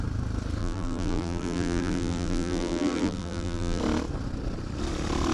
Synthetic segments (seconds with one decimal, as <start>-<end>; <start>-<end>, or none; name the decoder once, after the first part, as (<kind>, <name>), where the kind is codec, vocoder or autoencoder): 0.6-3.8 (vocoder, BigVGAN v2)